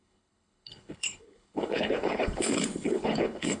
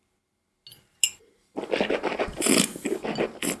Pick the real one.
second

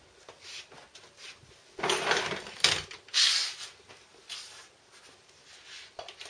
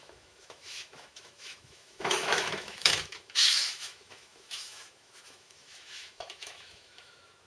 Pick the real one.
first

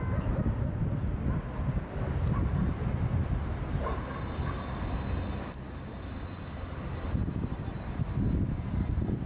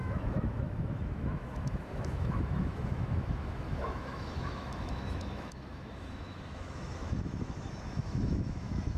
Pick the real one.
first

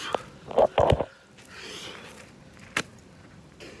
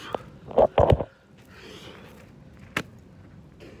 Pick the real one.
second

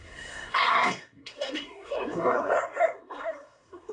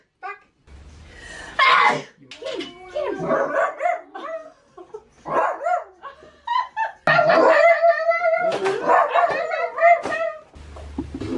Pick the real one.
second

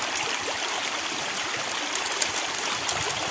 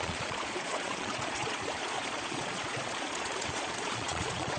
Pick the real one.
first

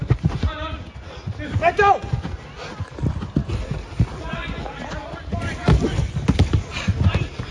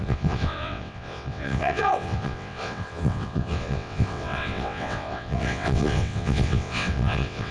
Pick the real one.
first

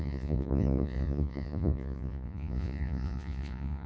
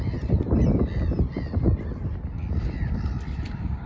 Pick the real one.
second